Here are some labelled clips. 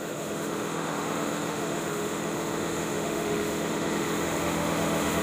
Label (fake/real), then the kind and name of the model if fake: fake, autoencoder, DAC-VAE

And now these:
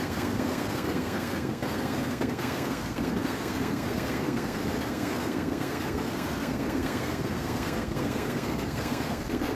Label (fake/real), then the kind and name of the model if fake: fake, codec, SNAC